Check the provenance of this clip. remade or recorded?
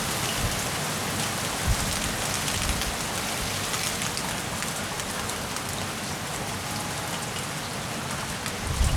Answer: recorded